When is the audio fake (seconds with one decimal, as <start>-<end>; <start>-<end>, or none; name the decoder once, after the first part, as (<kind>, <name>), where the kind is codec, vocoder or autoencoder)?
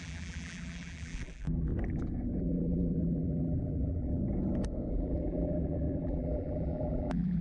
0.0-1.7 (vocoder, BigVGAN v2); 2.4-4.2; 4.9-7.4